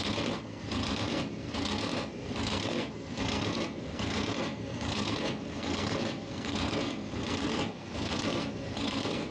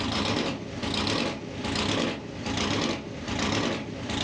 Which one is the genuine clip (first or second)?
second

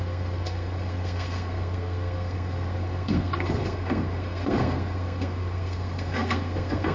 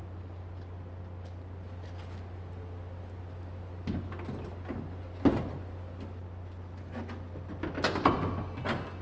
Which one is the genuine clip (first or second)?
second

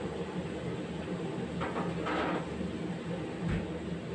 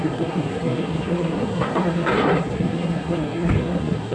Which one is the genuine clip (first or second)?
first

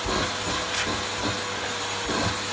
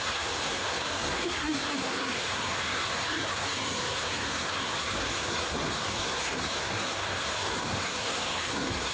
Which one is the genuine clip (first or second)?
first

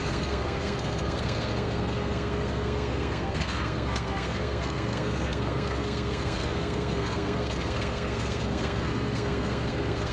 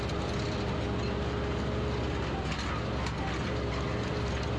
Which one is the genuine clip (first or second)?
second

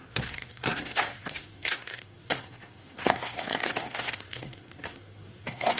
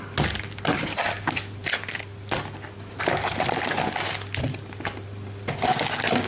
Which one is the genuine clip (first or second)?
second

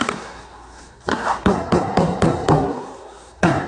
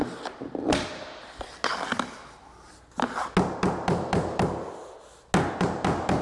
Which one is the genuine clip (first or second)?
second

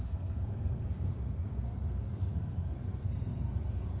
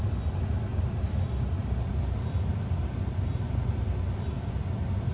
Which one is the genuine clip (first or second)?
second